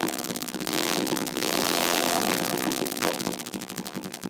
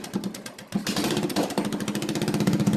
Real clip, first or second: second